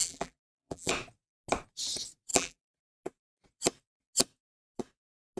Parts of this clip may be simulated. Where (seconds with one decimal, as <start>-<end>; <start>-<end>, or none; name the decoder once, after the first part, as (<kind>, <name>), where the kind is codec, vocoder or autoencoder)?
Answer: 0.0-0.9 (vocoder, BigVGAN v2); 2.3-2.8